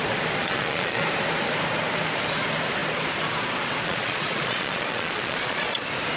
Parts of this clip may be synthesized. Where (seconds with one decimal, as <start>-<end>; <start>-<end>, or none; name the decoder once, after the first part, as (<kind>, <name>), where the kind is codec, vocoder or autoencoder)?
0.4-1.1 (vocoder, Vocos); 3.8-5.8